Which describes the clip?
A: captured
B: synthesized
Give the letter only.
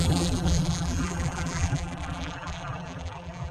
B